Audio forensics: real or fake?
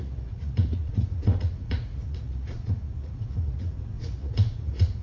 fake